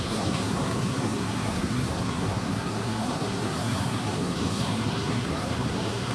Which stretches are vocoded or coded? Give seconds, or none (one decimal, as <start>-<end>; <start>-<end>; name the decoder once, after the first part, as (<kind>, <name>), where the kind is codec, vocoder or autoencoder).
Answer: 0.0-6.1 (codec, SNAC)